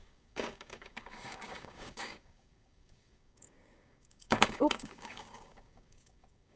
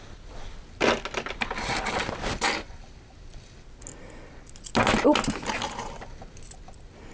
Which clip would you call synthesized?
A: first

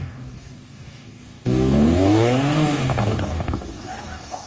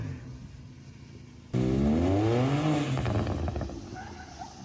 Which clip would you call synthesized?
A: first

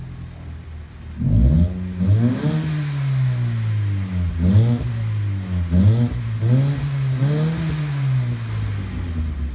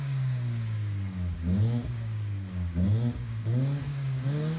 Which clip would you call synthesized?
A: second